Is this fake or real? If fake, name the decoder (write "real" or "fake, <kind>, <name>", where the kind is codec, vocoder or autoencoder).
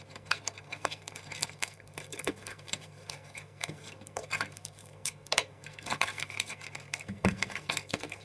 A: fake, codec, SNAC